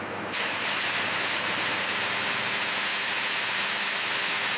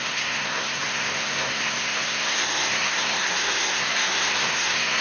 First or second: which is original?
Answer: first